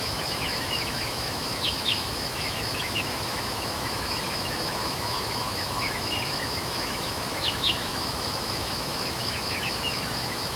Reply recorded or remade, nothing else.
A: remade